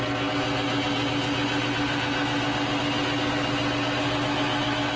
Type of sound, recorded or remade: recorded